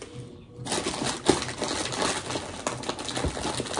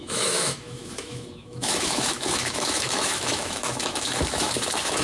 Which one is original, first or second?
first